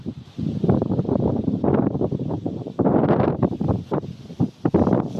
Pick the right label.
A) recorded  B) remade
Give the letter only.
A